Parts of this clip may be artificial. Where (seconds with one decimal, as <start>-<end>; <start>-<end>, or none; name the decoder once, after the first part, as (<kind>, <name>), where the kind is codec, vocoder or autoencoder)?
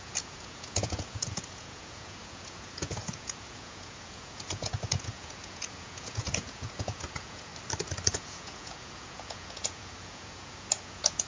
0.0-7.5 (vocoder, Vocos); 8.1-11.3